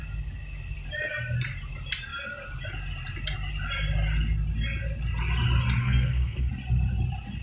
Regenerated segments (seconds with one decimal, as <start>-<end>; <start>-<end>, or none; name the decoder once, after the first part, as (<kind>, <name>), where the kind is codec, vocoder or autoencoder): 5.8-6.5 (codec, SNAC)